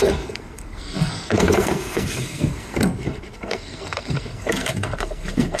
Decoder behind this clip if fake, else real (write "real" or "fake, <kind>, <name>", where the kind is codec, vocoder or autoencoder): fake, codec, SNAC